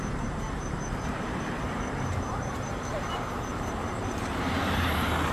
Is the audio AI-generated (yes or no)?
yes